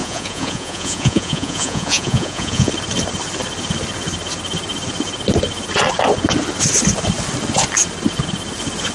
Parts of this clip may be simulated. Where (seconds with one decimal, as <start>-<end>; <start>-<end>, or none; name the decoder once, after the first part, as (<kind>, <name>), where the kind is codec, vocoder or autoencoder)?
0.0-2.7 (vocoder, Vocos)